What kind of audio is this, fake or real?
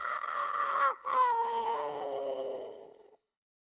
fake